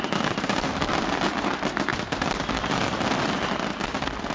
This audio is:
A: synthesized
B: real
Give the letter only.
B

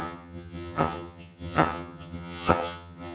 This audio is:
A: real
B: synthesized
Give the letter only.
B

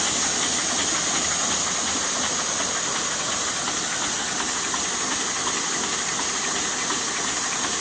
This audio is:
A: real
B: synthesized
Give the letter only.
A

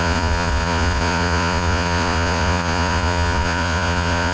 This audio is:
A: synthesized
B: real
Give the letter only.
A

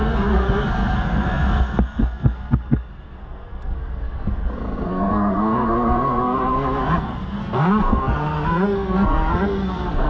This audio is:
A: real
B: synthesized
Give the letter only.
B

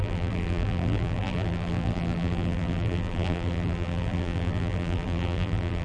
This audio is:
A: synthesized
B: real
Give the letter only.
A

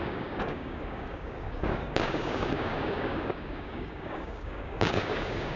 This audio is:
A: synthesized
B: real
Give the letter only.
A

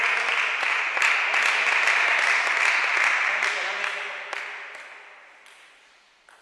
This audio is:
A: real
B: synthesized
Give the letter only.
A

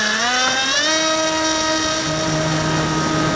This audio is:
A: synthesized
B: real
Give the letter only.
B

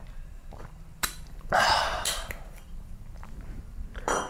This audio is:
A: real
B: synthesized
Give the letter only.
B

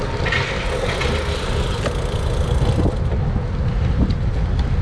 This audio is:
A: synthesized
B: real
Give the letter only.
B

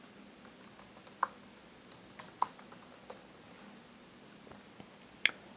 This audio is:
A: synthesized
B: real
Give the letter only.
B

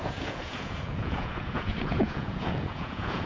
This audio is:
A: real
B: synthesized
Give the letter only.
B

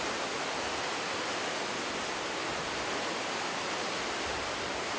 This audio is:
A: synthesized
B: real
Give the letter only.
B